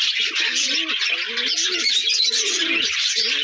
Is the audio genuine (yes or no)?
yes